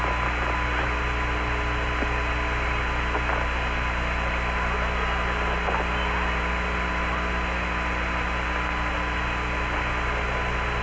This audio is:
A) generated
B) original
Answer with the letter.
B